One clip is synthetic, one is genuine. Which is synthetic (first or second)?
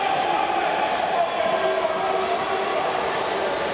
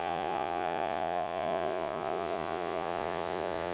second